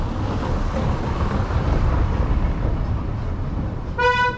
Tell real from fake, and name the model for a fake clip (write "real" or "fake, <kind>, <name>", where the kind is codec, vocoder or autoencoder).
real